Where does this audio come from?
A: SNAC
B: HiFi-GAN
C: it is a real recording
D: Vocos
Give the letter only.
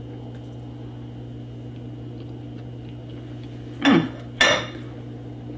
C